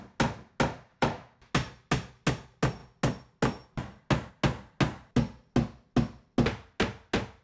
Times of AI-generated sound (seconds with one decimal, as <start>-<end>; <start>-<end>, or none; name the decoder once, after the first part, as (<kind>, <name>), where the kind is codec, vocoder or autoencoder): 0.9-1.5 (autoencoder, DAC-VAE)